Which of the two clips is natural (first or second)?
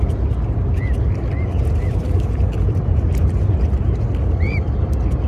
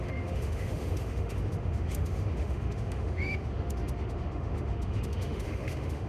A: first